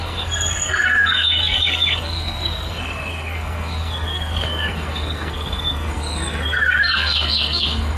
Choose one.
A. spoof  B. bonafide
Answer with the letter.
A